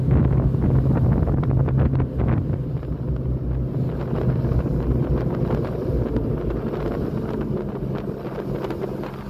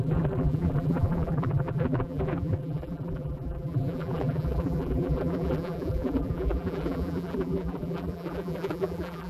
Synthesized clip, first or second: second